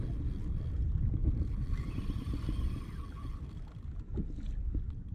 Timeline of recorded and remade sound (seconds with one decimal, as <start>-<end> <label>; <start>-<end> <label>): 0.0-1.2 recorded; 1.2-3.5 remade; 3.5-5.1 recorded